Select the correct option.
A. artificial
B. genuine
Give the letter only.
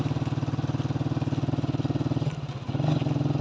B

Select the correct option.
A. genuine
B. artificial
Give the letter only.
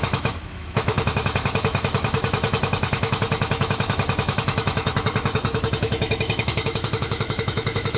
B